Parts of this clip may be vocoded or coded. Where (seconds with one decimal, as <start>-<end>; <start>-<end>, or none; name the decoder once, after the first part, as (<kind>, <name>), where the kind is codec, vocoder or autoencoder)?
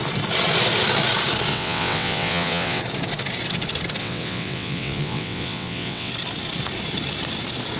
1.5-2.8 (vocoder, WaveNeXt); 4.0-6.1